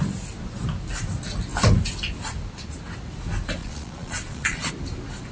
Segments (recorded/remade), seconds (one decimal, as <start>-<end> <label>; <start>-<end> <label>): 0.0-3.6 recorded; 3.6-4.7 remade; 4.7-5.3 recorded